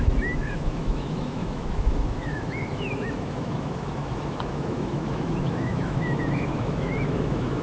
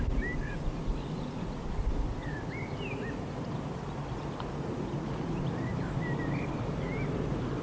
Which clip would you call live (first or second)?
second